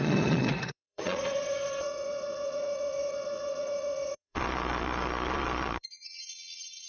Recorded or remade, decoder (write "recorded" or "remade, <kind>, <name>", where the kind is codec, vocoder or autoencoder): remade, vocoder, Vocos